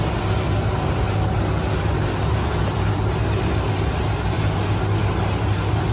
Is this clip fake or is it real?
real